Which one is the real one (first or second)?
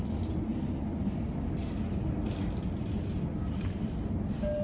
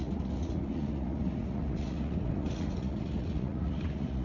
first